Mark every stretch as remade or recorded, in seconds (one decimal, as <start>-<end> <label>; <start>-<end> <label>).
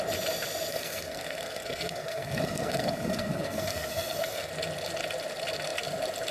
0.0-0.7 recorded; 0.7-4.5 remade; 4.5-6.3 recorded